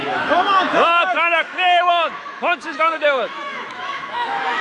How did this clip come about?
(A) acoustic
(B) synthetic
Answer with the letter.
B